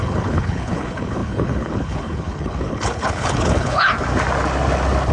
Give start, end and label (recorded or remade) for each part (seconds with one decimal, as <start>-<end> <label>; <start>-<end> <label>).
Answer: 0.0-3.9 remade; 3.9-5.1 recorded